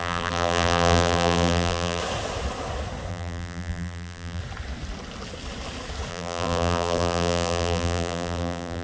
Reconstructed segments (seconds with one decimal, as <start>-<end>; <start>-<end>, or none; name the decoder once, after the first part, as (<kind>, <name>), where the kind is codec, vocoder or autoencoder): 0.0-2.0 (vocoder, BigVGAN v2); 3.1-4.4; 6.1-8.8